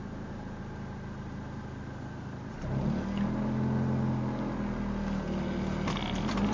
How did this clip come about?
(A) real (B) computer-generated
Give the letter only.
A